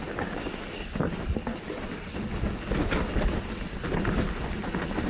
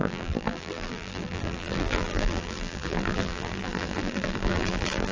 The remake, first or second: second